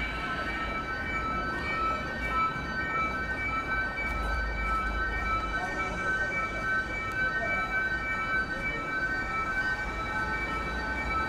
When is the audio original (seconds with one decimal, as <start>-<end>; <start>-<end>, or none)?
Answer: 0.0-2.5; 6.2-11.3

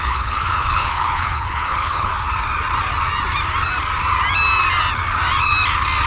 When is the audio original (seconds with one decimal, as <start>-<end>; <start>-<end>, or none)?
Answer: 2.1-6.1

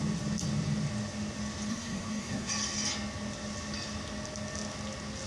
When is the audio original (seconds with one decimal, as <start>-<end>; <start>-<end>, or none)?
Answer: 0.0-1.7; 2.5-5.3

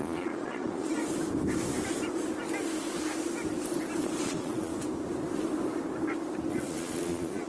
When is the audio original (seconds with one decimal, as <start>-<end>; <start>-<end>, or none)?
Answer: 1.0-4.2; 4.7-6.5

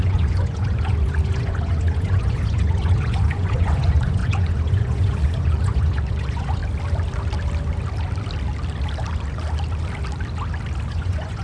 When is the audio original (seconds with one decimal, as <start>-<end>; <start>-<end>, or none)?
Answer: 6.6-10.9